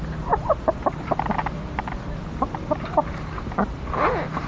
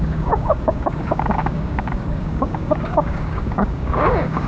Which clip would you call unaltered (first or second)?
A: first